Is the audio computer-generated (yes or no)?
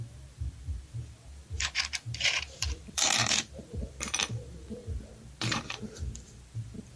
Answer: yes